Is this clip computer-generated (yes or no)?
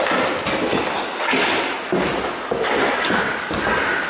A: no